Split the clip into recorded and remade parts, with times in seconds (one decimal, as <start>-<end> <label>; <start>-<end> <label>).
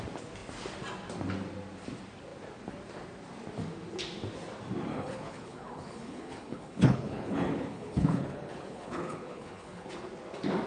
0.0-4.9 recorded; 4.9-9.9 remade; 9.9-10.7 recorded